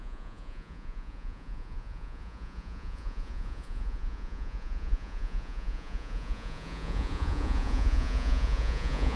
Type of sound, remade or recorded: remade